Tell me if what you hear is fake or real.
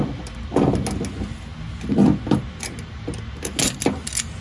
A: real